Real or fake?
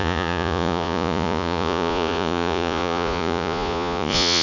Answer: fake